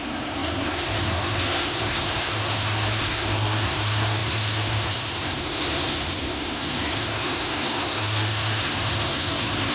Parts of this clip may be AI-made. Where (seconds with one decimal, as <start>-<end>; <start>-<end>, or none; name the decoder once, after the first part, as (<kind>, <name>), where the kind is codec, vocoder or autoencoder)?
0.0-9.7 (codec, SNAC)